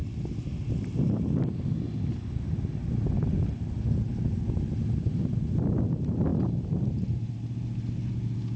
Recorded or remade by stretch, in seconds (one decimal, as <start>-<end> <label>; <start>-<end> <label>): 0.0-8.6 recorded